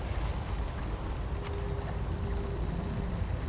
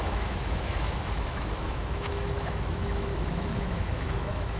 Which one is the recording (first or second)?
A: first